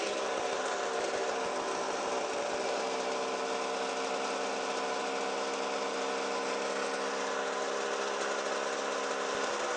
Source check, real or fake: real